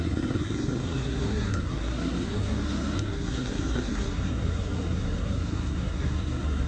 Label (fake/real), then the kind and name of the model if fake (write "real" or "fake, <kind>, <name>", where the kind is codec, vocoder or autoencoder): fake, codec, SNAC